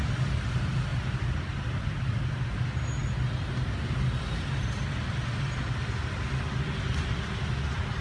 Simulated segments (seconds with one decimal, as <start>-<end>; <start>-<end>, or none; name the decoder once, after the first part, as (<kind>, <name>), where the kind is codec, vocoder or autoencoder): none